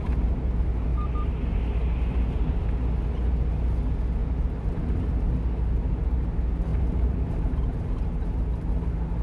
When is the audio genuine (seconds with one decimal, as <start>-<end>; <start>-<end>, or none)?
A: 0.0-0.9; 1.4-4.2; 5.1-6.7; 7.9-9.2